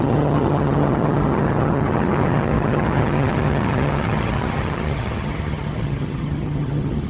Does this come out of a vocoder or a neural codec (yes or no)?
yes